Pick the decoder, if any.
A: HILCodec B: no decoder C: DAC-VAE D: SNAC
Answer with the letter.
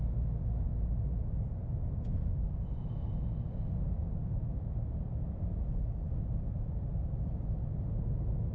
B